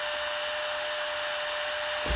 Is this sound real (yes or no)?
yes